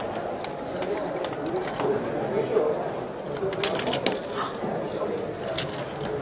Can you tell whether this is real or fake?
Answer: real